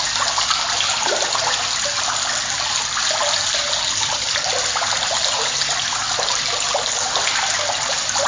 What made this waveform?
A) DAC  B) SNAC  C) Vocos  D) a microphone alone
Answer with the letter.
D